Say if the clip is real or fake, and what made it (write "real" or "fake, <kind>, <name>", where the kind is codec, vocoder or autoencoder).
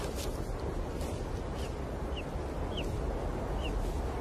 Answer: real